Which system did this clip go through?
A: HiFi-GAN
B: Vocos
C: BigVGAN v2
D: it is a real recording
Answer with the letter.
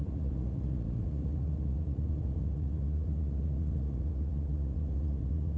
B